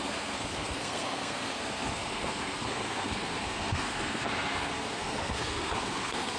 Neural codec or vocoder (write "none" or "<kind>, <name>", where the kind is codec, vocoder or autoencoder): codec, SNAC